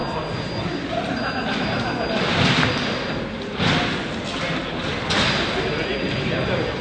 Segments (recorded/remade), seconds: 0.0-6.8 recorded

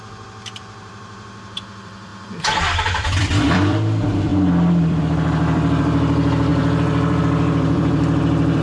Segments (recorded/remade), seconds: 0.0-8.6 remade

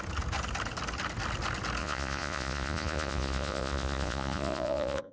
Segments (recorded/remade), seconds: 0.0-1.8 recorded; 1.8-5.1 remade

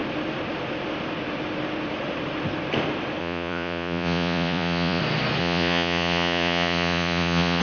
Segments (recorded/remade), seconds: 0.0-3.2 recorded; 3.2-5.0 remade; 5.0-5.4 recorded; 5.4-7.6 remade

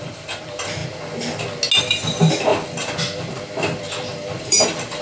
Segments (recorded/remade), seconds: 0.0-0.8 remade; 0.8-1.8 recorded; 1.8-2.5 remade; 2.5-4.4 recorded; 4.4-5.0 remade